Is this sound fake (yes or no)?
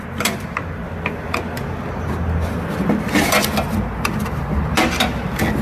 no